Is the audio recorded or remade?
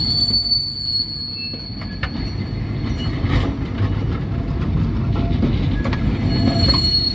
recorded